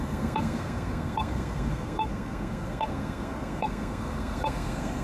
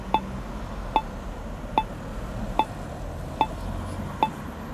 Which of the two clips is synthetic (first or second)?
first